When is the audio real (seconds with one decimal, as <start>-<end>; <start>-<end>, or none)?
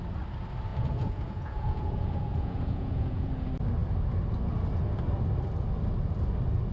0.0-0.7; 3.3-6.7